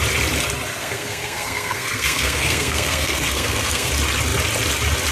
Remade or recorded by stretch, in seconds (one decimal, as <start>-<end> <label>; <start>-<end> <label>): 0.0-0.8 recorded; 0.8-3.9 remade; 3.9-5.1 recorded